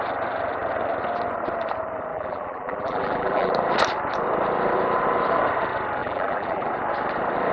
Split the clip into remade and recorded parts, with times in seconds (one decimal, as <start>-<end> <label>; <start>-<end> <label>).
0.0-2.1 recorded; 2.1-3.5 remade; 3.5-6.0 recorded; 6.0-6.7 remade; 6.7-7.5 recorded